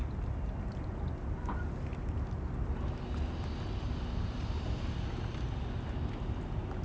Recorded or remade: recorded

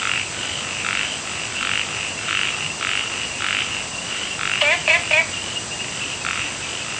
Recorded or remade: recorded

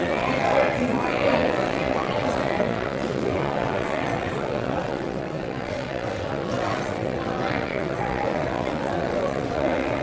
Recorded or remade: remade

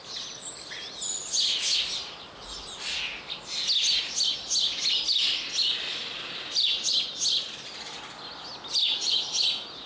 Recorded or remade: recorded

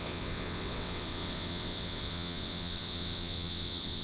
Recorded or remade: remade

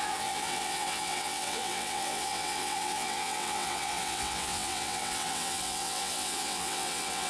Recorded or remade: remade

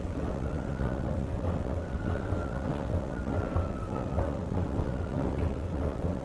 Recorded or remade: remade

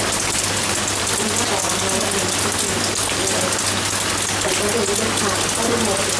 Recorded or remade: recorded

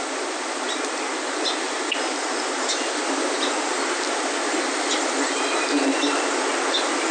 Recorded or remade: recorded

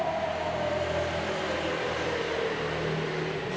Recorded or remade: recorded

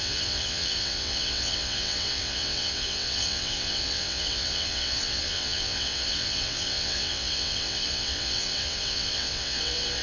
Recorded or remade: remade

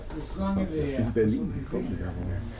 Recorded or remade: recorded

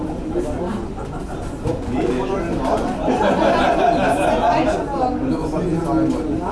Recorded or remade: recorded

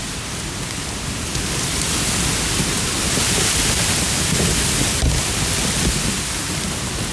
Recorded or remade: recorded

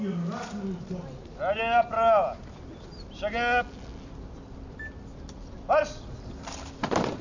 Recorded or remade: recorded